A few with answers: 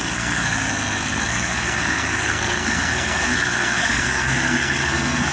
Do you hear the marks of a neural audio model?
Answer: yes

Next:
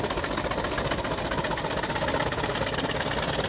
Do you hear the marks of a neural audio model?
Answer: no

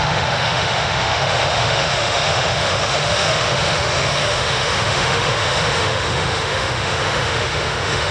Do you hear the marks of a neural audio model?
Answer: yes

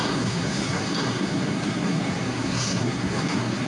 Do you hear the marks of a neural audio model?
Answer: yes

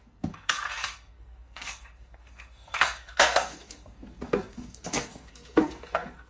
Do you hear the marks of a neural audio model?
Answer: yes